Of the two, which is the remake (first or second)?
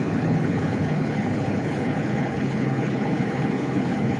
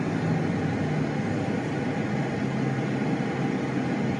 first